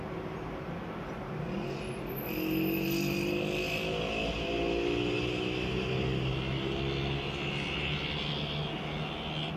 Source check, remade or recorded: recorded